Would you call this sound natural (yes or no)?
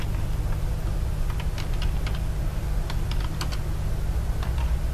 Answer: yes